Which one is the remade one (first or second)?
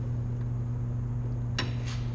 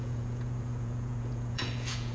second